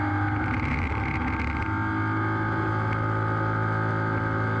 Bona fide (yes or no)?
yes